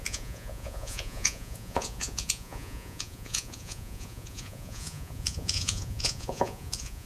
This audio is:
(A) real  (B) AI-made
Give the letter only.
B